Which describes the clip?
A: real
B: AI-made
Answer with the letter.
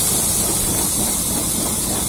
A